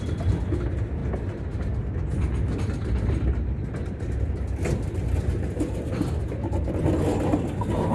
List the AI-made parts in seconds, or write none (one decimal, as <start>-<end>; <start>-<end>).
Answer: none